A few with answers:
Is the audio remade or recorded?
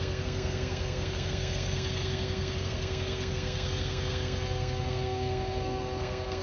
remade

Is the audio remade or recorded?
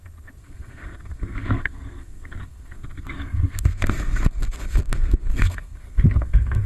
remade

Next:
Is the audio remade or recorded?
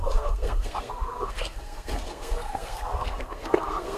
remade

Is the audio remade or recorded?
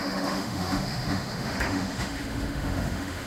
remade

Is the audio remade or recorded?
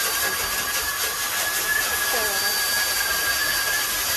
recorded